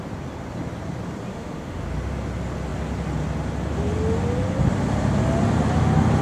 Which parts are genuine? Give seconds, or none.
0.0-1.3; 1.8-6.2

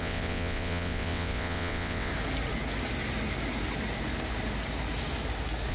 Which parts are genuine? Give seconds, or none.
2.1-5.7

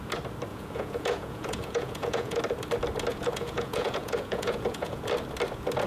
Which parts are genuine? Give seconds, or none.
0.0-0.5; 2.4-3.1; 5.0-5.9

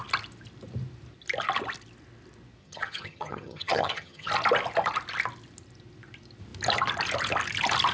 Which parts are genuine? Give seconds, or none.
0.0-2.6; 4.3-7.9

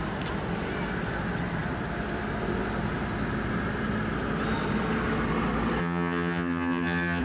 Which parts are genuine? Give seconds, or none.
0.0-5.8

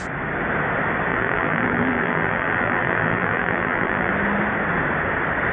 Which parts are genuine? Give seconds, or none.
0.0-1.1; 4.1-5.5